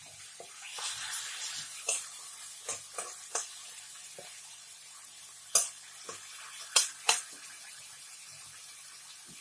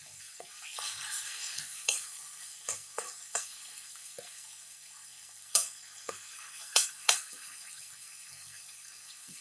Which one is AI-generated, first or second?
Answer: second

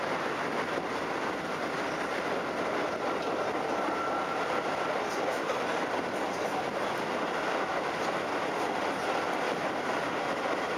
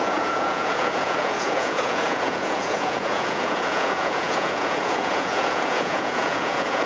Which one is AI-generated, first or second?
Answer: second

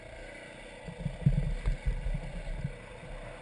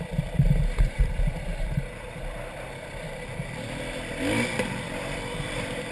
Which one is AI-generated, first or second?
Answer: second